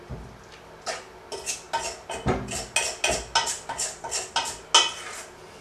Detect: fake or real real